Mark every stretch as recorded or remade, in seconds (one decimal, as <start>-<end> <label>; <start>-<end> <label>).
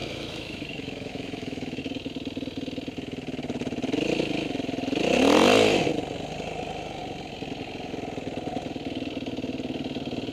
0.0-1.8 remade; 1.8-10.3 recorded